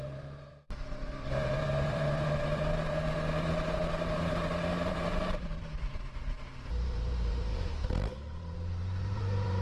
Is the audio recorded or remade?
remade